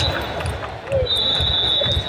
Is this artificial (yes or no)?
no